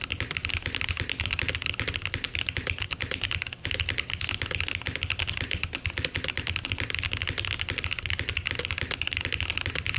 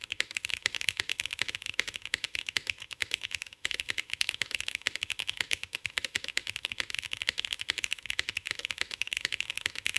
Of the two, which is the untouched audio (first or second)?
first